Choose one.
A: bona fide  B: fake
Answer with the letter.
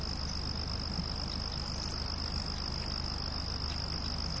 A